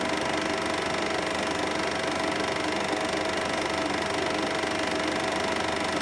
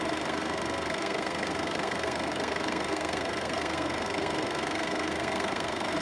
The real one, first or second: first